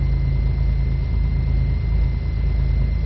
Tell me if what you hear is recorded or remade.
recorded